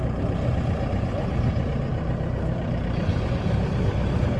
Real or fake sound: fake